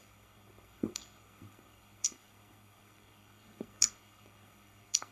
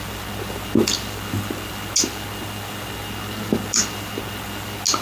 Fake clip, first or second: first